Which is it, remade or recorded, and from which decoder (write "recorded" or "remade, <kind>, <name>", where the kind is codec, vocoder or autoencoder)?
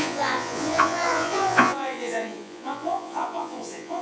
remade, vocoder, Vocos